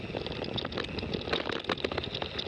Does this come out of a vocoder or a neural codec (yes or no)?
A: no